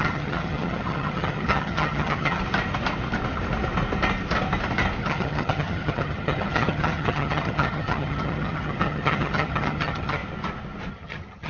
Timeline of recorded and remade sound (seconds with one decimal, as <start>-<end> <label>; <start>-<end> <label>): 0.0-2.4 remade; 2.4-5.0 recorded; 5.0-10.2 remade; 10.2-10.9 recorded; 10.9-11.5 remade